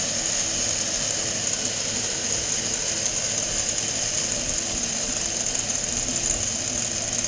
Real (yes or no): yes